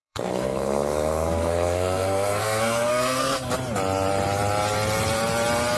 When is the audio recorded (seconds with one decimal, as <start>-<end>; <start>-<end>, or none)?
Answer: 3.5-5.8